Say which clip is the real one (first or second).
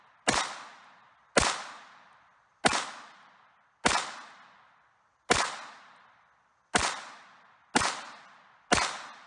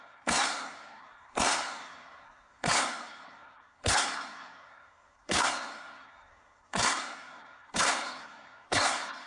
first